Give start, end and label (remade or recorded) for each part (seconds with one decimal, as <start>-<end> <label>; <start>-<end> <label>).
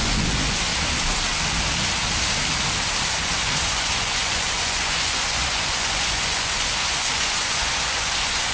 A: 0.0-0.7 remade; 0.7-3.2 recorded; 3.2-8.5 remade